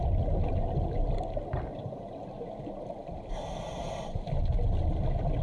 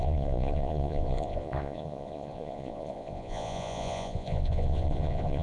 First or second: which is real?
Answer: first